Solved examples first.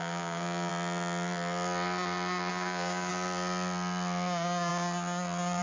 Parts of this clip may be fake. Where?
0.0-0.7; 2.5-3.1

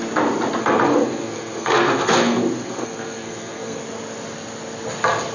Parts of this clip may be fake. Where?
0.6-3.8

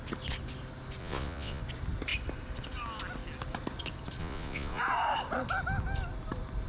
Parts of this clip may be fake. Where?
1.0-1.6; 4.2-4.8

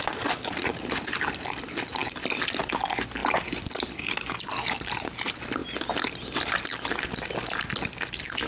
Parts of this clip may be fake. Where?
3.2-4.1

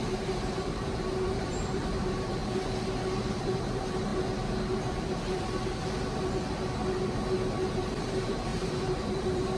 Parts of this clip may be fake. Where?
0.0-2.4; 3.3-4.1; 8.0-9.6